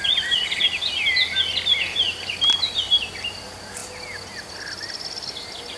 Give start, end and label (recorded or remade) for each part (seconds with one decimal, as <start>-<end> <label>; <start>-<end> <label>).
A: 0.0-5.8 recorded